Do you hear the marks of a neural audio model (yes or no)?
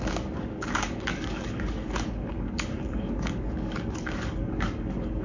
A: yes